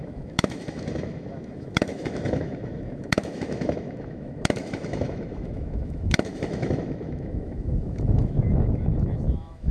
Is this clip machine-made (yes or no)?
yes